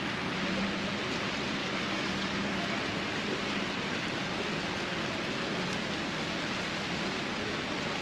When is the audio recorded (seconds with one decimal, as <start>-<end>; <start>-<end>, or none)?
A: 0.0-1.6; 2.6-8.0